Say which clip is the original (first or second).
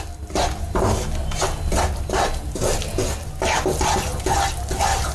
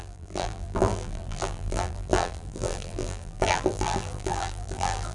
first